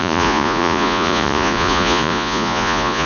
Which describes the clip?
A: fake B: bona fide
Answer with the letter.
A